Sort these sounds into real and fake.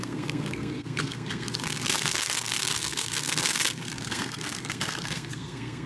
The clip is fake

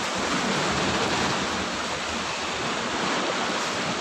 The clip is real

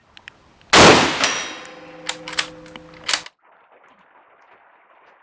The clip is real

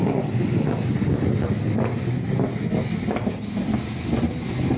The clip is real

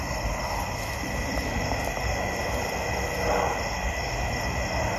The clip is real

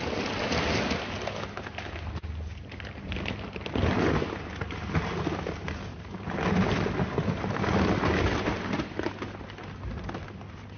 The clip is real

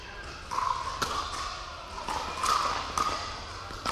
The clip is real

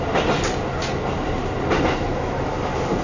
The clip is real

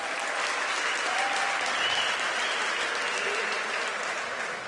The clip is real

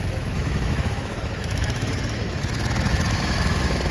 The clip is fake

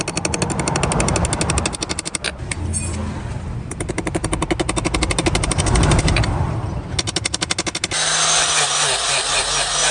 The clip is real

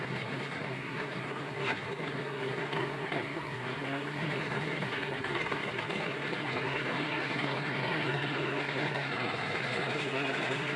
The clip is fake